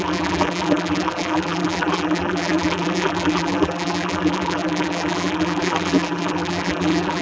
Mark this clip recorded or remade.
remade